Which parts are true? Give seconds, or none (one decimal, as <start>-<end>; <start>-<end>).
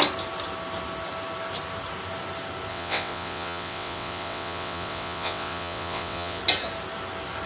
0.0-2.7; 6.4-7.5